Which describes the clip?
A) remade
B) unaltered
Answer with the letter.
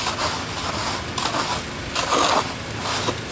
B